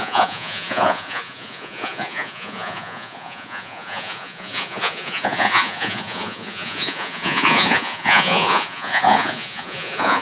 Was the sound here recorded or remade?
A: remade